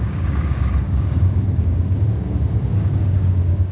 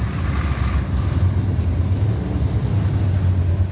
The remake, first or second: first